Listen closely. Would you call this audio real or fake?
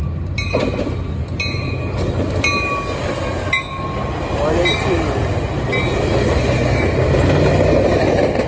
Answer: real